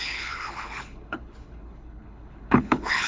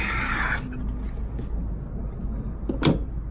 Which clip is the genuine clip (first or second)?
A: second